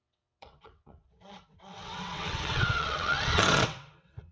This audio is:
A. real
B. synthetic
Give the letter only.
B